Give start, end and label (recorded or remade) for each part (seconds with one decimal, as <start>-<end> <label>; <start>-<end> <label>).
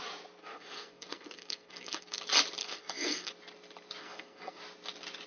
0.0-0.4 recorded; 0.4-2.2 remade; 2.2-2.6 recorded; 2.6-3.3 remade; 3.3-4.0 recorded; 4.0-4.6 remade; 4.6-5.3 recorded